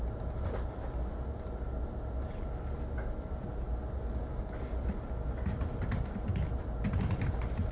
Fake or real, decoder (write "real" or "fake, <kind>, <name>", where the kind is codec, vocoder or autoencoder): real